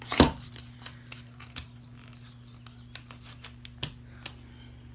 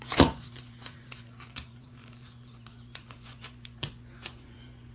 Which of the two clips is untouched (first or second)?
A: first